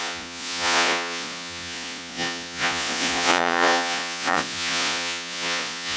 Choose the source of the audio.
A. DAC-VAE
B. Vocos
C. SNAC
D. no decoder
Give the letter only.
B